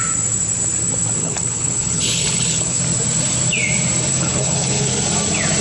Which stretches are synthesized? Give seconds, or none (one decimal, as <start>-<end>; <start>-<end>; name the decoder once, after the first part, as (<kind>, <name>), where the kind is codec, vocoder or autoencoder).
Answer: 1.2-2.8 (codec, HILCodec); 4.1-4.9